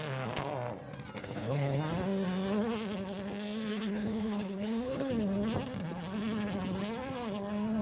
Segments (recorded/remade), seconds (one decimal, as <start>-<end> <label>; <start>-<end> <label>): 0.0-1.2 recorded; 1.2-1.8 remade; 1.8-3.7 recorded; 3.7-5.1 remade; 5.1-7.8 recorded